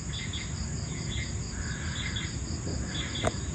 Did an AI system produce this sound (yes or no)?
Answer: no